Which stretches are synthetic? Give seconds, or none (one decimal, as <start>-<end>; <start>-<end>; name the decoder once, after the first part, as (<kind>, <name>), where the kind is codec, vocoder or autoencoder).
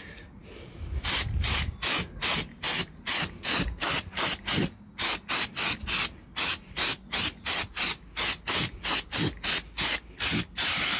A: none